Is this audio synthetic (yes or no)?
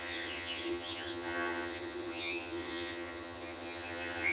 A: yes